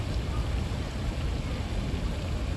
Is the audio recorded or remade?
recorded